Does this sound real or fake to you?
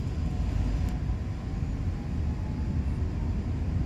real